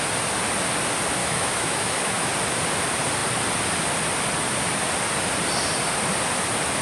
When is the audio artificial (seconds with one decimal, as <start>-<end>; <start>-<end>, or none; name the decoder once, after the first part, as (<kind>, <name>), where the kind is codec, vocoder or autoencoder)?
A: 1.2-2.3 (autoencoder, DAC-VAE)